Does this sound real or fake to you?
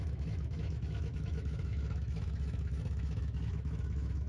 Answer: fake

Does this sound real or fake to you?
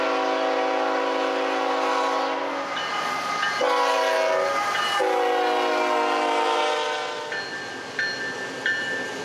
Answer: real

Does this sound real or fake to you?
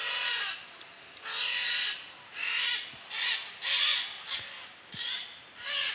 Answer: real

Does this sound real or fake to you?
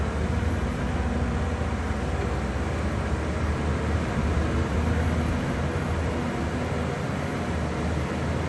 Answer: real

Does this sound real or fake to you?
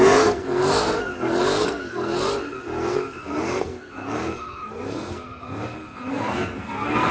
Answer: fake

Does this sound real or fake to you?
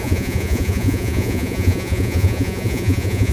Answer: fake